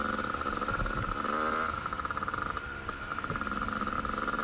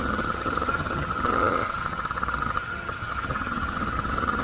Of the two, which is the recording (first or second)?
first